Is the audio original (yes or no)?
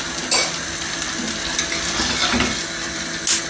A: yes